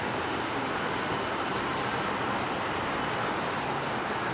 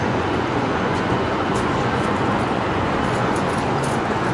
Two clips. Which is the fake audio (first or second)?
second